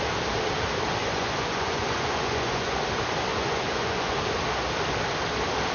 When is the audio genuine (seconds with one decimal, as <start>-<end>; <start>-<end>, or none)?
0.0-1.0; 2.8-3.3; 4.2-5.7